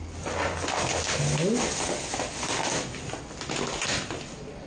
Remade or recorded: recorded